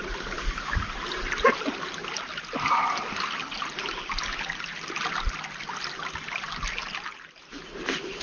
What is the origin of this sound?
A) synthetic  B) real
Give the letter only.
B